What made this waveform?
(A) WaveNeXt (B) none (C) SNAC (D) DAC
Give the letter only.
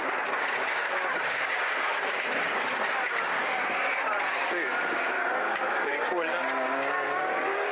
D